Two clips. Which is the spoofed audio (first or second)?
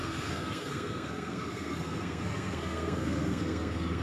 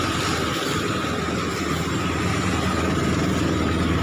first